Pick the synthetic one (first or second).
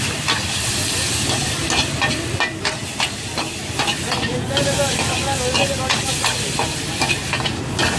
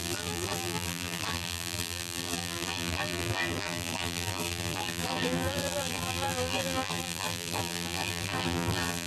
second